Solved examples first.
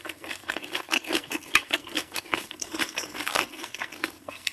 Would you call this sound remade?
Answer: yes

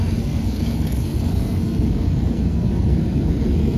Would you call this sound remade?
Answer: yes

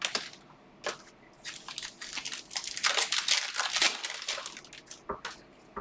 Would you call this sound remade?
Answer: no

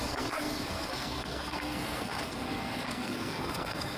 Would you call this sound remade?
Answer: yes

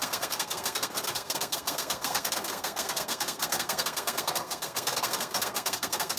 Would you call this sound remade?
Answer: yes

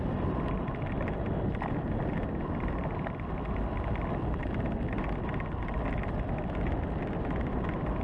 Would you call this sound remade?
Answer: no